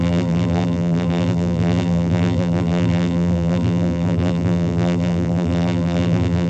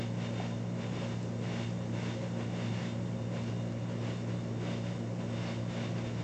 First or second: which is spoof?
first